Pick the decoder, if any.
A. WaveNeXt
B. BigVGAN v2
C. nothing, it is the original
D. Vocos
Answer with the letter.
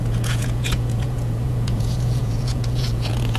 D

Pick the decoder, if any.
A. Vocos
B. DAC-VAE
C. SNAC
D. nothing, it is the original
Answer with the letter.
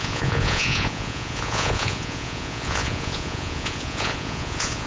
A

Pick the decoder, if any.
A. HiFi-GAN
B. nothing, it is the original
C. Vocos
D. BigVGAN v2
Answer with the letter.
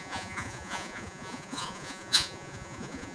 C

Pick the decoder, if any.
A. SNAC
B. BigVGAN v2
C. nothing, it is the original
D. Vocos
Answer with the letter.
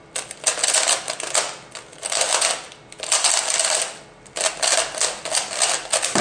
C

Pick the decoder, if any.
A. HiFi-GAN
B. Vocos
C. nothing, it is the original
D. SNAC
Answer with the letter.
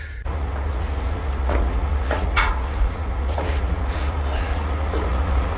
B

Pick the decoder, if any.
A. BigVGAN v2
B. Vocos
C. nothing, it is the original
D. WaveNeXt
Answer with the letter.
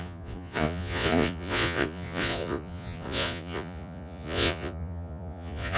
B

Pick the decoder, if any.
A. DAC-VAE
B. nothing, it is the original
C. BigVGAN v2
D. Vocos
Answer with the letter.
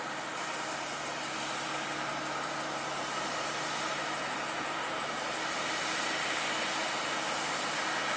B